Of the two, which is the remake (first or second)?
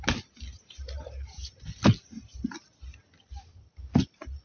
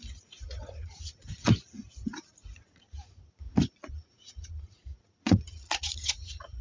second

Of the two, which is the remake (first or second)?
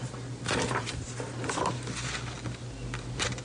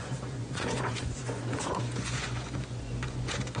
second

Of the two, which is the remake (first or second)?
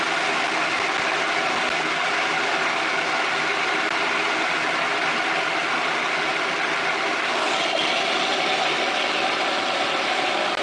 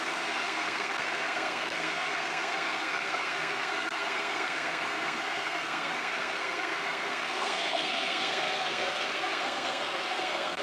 second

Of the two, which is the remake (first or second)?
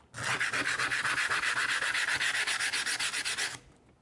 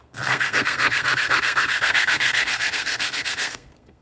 second